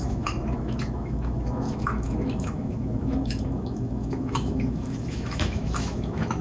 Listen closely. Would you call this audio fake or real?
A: fake